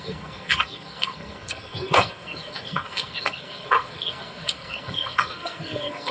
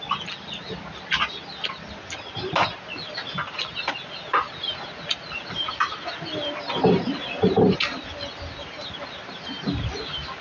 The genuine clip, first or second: second